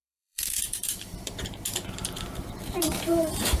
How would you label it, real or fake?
fake